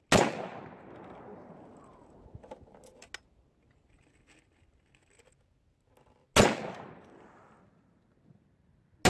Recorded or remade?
recorded